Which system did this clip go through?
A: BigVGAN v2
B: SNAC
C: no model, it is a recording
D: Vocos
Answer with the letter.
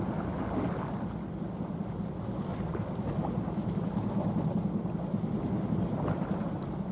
C